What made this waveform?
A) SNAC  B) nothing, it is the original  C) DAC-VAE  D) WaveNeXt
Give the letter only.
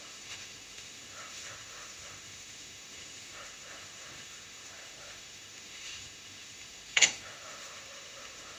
C